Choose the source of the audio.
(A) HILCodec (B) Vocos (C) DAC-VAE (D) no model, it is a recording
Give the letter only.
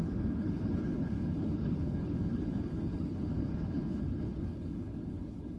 A